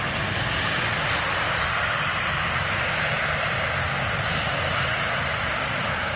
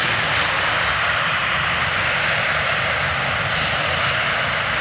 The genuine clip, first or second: first